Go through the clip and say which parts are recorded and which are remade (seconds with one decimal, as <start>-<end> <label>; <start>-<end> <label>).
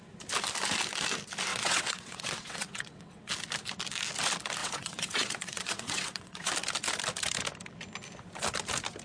0.0-1.5 recorded; 1.5-3.3 remade; 3.3-4.6 recorded; 4.6-6.5 remade; 6.5-9.0 recorded